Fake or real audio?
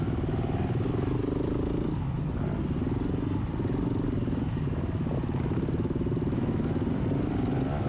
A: real